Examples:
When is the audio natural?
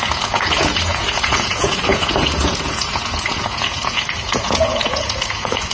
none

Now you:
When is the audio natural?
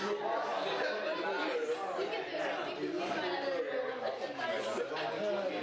0.0-5.6